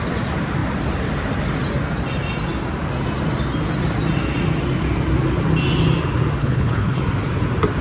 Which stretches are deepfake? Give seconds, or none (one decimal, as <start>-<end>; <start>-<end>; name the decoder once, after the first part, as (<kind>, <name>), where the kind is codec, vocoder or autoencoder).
6.4-7.0 (codec, HILCodec)